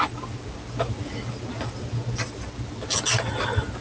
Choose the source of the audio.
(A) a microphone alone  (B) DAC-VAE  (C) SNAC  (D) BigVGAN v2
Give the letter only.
A